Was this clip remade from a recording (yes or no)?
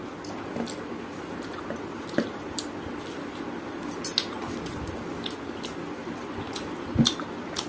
no